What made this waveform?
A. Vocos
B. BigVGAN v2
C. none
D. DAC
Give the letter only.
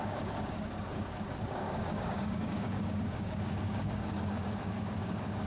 D